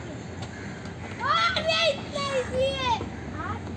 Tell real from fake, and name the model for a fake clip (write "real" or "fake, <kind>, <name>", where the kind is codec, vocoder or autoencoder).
real